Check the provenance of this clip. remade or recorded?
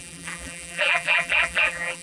remade